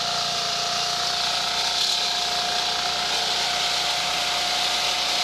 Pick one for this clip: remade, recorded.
recorded